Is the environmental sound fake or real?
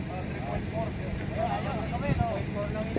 real